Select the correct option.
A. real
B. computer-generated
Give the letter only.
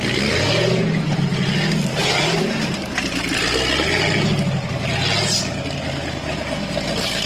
A